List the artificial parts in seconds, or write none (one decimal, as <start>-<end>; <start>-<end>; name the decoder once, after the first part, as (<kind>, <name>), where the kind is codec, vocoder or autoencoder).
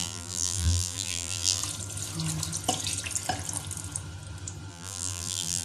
0.0-1.6 (vocoder, BigVGAN v2); 4.7-5.6